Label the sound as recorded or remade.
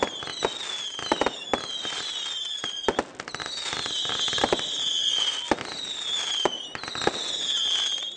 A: recorded